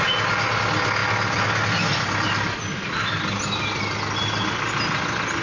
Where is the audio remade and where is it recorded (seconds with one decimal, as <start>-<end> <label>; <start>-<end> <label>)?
0.0-5.4 recorded